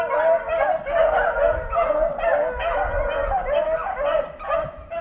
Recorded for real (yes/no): yes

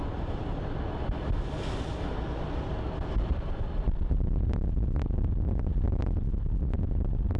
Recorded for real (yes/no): yes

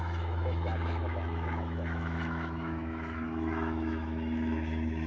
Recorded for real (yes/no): no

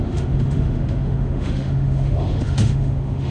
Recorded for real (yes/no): no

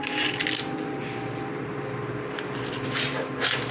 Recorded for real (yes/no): yes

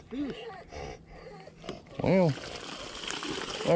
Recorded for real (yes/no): yes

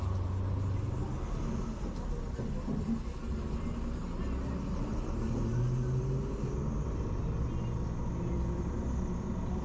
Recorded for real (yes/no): yes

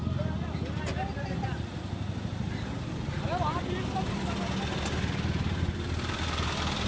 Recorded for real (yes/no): yes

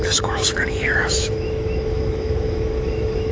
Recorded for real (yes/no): no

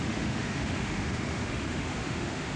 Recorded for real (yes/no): no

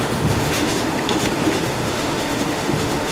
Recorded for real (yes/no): no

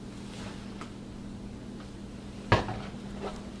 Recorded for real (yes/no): yes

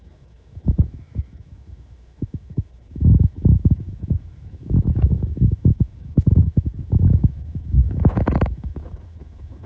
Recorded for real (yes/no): no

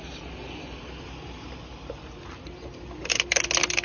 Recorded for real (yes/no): yes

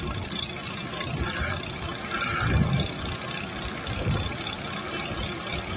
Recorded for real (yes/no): yes